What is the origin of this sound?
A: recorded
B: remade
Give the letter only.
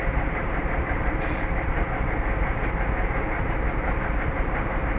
A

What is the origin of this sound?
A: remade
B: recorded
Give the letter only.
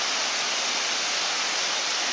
B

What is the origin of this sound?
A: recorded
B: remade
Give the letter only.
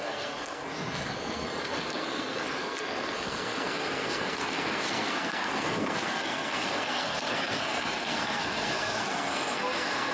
B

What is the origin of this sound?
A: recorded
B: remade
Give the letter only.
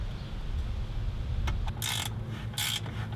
A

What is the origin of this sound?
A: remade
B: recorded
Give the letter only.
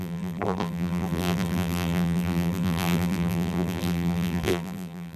A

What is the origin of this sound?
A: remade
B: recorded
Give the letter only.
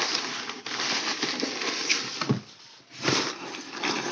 B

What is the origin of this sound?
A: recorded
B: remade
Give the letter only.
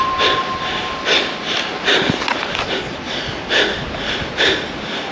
A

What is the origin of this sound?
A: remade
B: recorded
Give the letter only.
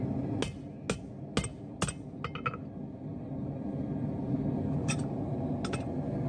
B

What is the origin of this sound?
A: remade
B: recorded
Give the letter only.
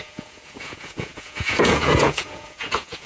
A